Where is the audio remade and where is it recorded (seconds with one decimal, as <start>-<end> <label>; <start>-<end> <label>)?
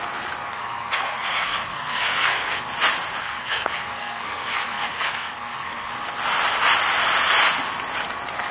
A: 0.0-0.5 recorded; 0.5-2.6 remade; 2.6-3.2 recorded; 3.2-5.9 remade; 5.9-8.5 recorded